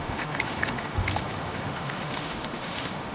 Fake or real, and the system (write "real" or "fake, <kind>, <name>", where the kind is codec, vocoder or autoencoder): fake, autoencoder, DAC-VAE